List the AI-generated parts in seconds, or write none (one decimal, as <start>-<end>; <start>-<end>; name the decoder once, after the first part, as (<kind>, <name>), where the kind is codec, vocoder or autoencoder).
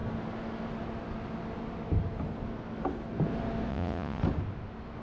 3.7-4.2 (vocoder, Vocos)